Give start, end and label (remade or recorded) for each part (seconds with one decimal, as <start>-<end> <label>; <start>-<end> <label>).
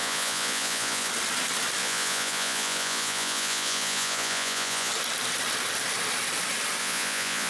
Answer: 0.0-1.1 remade; 1.1-1.8 recorded; 1.8-4.9 remade; 4.9-6.8 recorded; 6.8-7.5 remade